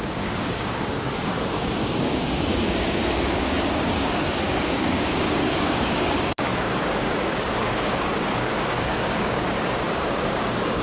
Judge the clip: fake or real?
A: fake